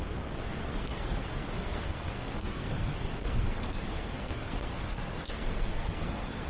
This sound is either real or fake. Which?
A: fake